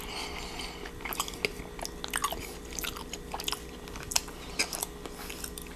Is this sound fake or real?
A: real